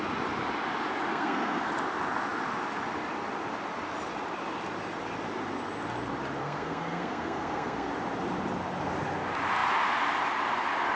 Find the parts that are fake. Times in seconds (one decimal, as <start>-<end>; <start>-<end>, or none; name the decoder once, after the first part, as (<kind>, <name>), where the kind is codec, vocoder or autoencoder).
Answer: 1.1-1.7 (codec, SNAC); 6.4-7.9

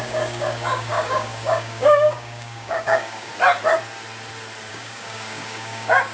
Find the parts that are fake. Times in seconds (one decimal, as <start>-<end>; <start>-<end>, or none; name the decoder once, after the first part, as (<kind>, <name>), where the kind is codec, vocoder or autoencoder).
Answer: 0.0-3.3 (codec, DAC); 4.7-6.1

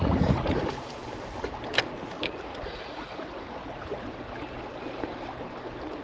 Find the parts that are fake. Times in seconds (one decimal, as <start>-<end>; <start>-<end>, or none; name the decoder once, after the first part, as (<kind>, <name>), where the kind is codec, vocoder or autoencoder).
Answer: 0.0-0.6 (vocoder, Vocos); 2.5-4.2

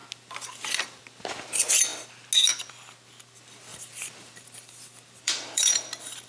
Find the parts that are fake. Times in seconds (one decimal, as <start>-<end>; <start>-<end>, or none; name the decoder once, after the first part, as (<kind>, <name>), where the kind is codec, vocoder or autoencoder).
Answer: 3.7-6.3 (vocoder, BigVGAN v2)

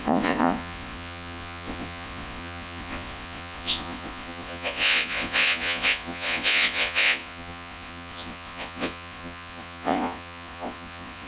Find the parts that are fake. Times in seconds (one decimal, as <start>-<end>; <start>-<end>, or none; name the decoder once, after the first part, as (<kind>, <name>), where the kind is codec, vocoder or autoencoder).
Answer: 0.0-11.3 (vocoder, Vocos)

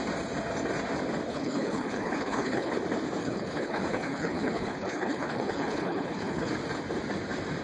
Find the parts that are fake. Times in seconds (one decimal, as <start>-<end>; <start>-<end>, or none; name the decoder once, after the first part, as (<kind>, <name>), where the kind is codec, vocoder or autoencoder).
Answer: 1.3-2.7 (codec, HILCodec); 3.2-6.5